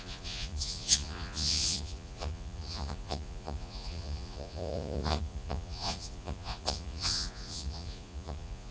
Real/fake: fake